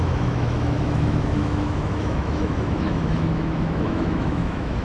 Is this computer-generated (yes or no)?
yes